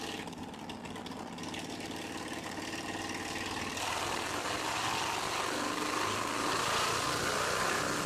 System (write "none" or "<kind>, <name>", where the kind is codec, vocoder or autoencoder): none